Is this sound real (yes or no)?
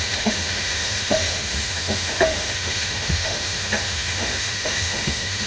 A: no